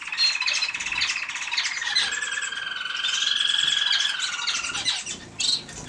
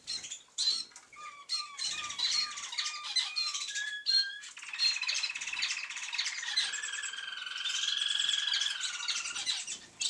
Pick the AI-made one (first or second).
second